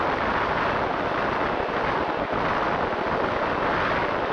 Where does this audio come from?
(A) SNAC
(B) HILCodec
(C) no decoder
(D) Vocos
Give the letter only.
C